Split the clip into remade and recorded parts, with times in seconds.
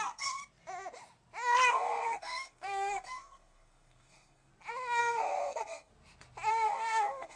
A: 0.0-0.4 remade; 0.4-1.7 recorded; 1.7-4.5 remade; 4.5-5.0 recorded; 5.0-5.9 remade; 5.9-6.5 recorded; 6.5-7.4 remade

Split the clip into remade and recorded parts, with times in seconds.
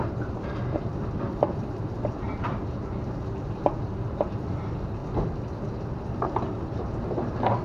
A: 0.0-5.0 remade; 5.0-5.9 recorded; 5.9-7.6 remade